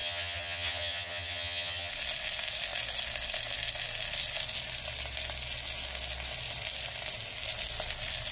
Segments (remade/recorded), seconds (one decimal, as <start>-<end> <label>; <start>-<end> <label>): 0.0-1.9 remade; 1.9-8.3 recorded